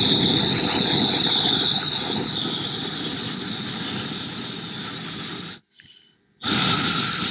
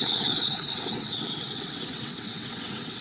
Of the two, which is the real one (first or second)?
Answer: first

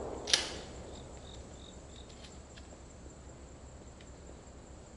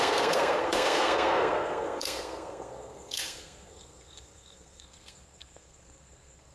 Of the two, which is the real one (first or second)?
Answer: first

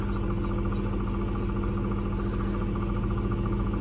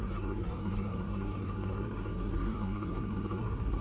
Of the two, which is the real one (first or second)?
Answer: first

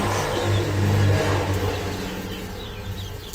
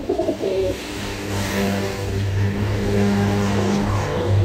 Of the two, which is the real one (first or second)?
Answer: first